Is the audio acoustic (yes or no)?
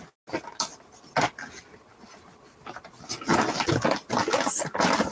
yes